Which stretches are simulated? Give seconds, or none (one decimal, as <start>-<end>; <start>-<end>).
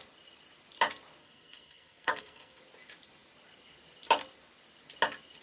1.2-2.6